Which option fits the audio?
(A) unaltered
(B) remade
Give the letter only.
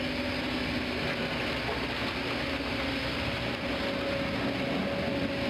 A